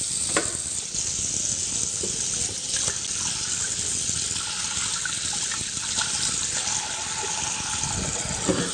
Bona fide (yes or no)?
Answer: yes